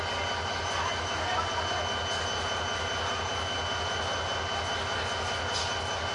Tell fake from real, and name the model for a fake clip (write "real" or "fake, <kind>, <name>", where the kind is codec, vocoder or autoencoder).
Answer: real